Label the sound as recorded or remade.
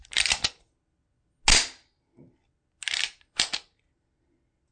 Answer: recorded